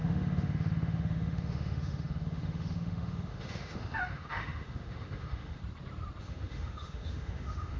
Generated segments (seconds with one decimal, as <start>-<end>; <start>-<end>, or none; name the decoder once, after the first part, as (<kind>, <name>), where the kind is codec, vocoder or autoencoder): 0.0-5.6 (autoencoder, DAC-VAE); 6.2-7.8